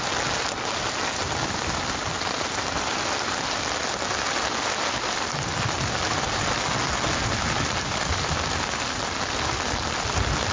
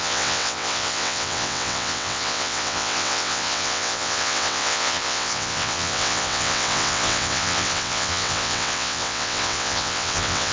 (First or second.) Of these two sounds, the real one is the first